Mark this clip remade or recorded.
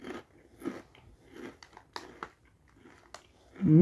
recorded